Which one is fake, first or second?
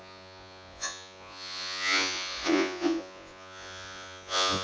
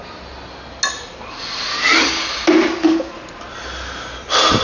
first